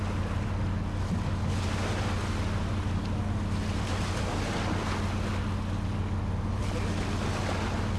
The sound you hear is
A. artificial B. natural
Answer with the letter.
B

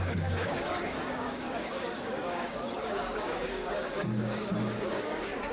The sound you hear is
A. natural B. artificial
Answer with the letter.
B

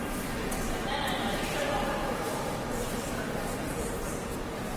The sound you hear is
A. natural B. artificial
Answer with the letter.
B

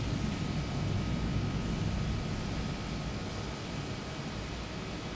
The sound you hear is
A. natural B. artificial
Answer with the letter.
A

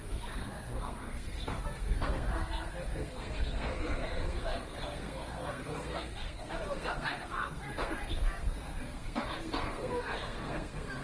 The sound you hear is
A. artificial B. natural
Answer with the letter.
A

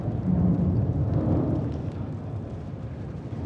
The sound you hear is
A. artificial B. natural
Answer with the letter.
B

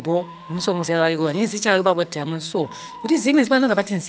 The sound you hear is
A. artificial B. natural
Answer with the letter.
A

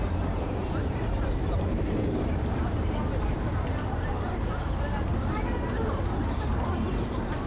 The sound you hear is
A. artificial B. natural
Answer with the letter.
A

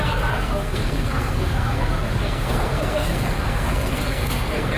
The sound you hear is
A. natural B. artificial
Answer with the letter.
B